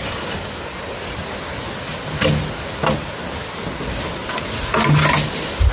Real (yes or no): yes